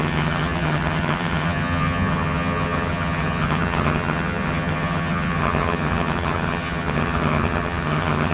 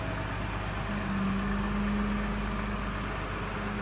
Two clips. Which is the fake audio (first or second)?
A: first